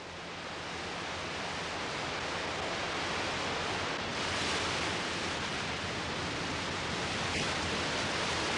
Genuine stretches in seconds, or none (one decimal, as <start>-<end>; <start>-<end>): 0.0-8.6